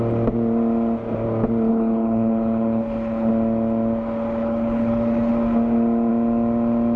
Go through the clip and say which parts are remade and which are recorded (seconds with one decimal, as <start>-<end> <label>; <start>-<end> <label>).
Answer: 0.0-1.7 recorded; 1.7-3.3 remade; 3.3-4.4 recorded; 4.4-5.3 remade; 5.3-7.0 recorded

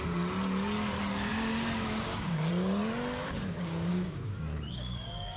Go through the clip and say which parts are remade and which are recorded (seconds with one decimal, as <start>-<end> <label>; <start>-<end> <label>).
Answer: 0.0-1.3 recorded; 1.3-2.5 remade; 2.5-3.2 recorded; 3.2-5.4 remade

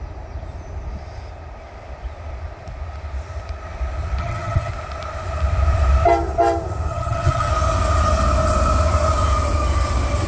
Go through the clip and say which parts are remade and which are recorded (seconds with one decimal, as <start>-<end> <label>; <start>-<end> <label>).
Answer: 0.0-4.2 recorded; 4.2-4.7 remade; 4.7-6.9 recorded; 6.9-7.5 remade; 7.5-10.3 recorded

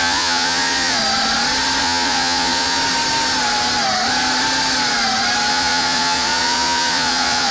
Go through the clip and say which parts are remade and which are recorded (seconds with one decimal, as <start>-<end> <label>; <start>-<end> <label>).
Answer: 0.0-1.0 remade; 1.0-1.8 recorded; 1.8-2.8 remade; 2.8-5.5 recorded; 5.5-7.5 remade